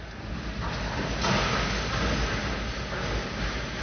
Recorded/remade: recorded